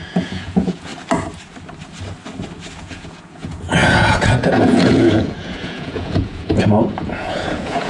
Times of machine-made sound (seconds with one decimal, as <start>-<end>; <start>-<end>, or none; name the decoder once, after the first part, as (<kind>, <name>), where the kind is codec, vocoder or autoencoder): 0.0-0.9 (vocoder, Vocos); 2.8-7.9

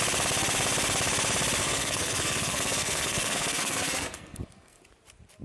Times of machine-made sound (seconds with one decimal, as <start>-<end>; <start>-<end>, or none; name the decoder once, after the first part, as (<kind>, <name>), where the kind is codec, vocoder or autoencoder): 1.6-4.8 (codec, SNAC)

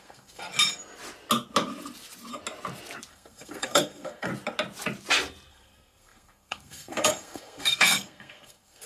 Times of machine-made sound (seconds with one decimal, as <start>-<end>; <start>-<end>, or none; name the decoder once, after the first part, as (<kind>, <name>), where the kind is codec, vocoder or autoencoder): 0.0-0.5 (codec, SNAC); 3.1-4.3; 5.5-8.9